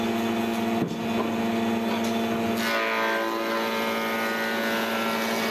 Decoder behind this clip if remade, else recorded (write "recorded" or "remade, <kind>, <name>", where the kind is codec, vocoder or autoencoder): recorded